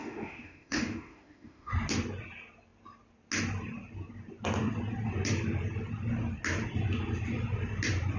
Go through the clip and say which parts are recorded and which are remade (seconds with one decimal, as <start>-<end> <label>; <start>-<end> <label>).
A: 0.0-1.7 remade; 1.7-8.2 recorded